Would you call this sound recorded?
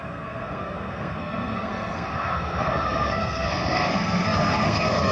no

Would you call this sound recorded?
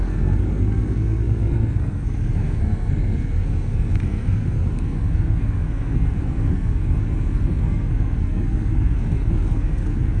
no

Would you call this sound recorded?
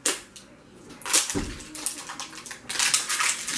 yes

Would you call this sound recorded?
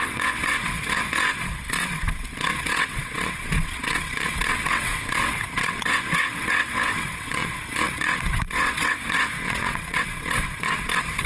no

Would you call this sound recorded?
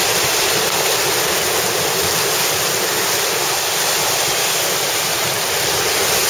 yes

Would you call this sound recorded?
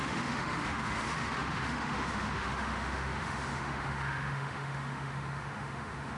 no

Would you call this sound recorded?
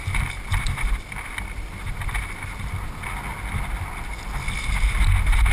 yes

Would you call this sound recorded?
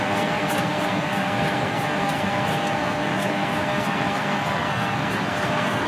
no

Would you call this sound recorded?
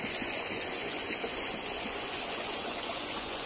no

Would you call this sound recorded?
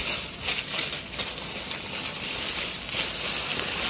yes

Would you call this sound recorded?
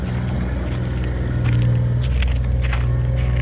yes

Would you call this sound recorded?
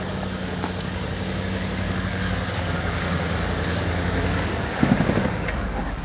no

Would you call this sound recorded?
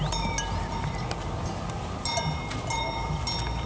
yes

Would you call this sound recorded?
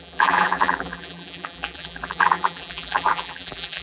no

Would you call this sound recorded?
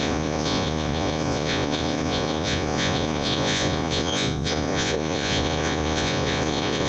no